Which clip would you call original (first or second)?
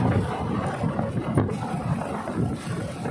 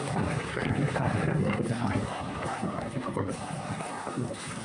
first